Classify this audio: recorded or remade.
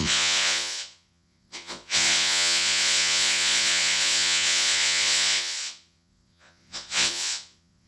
remade